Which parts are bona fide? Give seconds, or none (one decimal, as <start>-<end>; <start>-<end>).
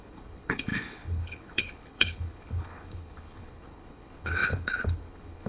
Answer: none